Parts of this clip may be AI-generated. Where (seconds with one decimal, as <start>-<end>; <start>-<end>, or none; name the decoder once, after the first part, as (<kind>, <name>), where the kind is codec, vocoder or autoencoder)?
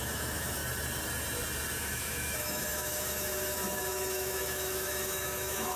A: 0.0-0.6 (autoencoder, DAC-VAE); 1.8-5.8